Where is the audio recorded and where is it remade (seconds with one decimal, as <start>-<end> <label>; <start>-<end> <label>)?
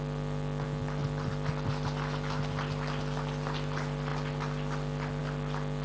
0.0-5.8 recorded